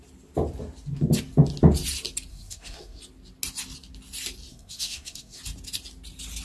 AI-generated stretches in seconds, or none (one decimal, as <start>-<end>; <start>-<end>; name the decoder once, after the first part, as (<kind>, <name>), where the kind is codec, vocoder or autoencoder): 2.3-3.0 (codec, SNAC); 4.5-5.4